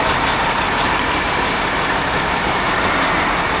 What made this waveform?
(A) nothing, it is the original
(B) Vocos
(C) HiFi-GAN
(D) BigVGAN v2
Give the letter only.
A